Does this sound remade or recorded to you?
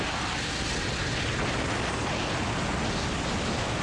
recorded